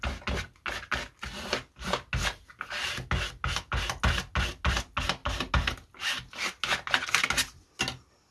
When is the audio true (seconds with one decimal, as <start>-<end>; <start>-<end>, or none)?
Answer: 0.0-8.3

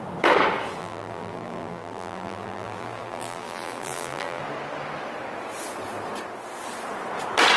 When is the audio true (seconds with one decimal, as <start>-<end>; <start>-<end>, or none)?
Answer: 0.0-0.8; 4.4-7.6

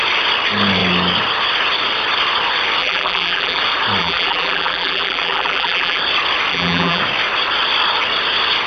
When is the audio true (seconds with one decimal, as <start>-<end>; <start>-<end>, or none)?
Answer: 0.0-2.8; 3.6-4.0; 6.0-6.5; 7.0-8.7

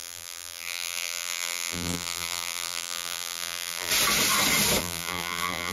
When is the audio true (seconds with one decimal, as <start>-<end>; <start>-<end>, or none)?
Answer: 3.9-4.8